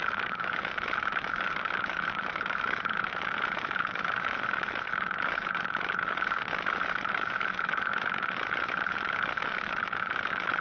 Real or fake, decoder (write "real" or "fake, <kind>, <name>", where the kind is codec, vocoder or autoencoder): fake, autoencoder, DAC-VAE